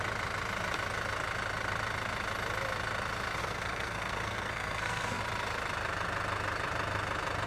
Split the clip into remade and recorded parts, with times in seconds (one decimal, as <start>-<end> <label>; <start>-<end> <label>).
0.0-3.4 recorded; 3.4-5.2 remade; 5.2-7.5 recorded